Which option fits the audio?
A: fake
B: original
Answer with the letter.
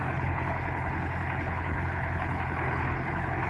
A